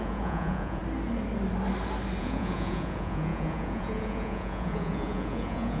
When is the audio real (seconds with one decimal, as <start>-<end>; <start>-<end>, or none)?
0.8-2.2